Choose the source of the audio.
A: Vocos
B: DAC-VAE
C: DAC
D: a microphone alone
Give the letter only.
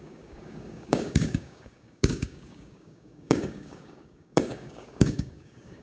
C